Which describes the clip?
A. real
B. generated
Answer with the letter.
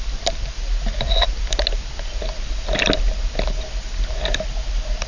A